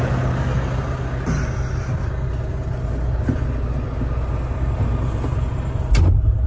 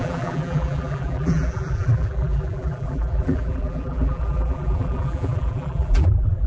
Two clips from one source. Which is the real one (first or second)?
first